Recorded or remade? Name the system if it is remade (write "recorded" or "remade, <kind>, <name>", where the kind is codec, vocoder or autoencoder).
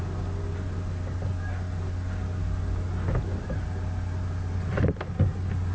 recorded